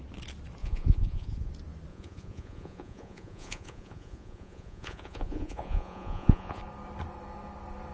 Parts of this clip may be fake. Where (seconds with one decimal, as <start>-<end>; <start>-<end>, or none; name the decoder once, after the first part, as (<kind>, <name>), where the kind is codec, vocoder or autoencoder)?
0.6-1.5 (vocoder, Vocos); 1.9-6.6